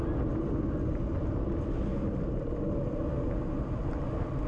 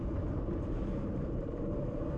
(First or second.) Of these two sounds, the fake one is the second